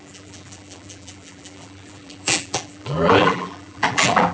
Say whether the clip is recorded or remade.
remade